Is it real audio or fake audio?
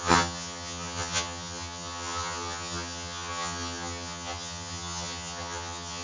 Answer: fake